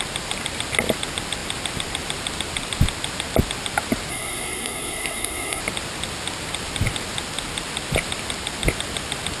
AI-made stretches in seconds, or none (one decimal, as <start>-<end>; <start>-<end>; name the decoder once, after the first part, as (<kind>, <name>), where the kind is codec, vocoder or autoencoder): 4.1-5.6 (codec, SNAC)